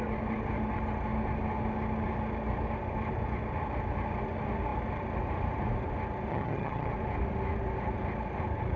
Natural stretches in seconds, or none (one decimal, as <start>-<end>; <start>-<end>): 0.0-6.3; 6.9-8.8

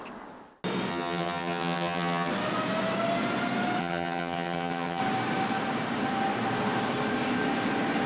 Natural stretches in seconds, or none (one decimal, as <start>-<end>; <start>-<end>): 0.0-0.9; 2.3-3.8; 5.0-8.1

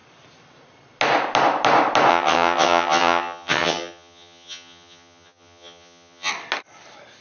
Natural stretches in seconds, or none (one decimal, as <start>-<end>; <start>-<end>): 0.0-2.1; 6.3-7.2

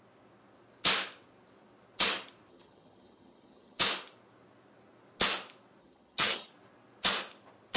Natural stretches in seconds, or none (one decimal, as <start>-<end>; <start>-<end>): 0.0-2.5; 3.8-5.8; 6.5-7.8

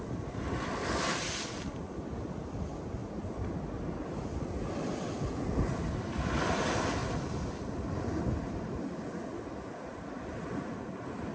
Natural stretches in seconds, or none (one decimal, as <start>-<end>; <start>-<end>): 0.0-11.3

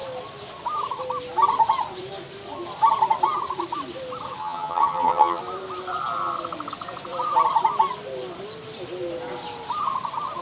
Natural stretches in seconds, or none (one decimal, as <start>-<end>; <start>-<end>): 0.0-4.4; 5.4-10.4

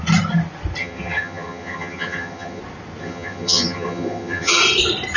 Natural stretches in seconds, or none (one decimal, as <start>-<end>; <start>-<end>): 0.0-0.8; 2.6-3.0; 4.6-5.2

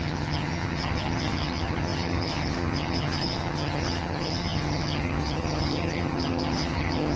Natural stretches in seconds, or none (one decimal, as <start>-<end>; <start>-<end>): none